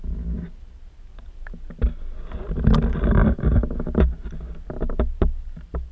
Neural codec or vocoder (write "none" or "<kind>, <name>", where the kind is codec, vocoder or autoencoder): none